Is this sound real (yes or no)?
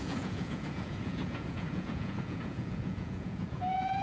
no